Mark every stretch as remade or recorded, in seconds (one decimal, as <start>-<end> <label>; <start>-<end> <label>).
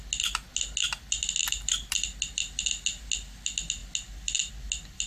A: 0.0-1.4 recorded; 1.4-1.9 remade; 1.9-5.1 recorded